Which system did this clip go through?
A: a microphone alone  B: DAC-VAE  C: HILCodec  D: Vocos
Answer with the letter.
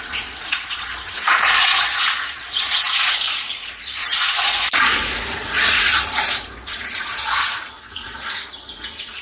D